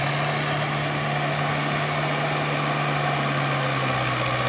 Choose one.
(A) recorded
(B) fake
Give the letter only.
A